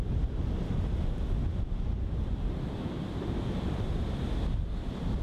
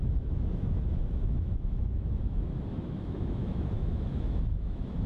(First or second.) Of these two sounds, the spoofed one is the second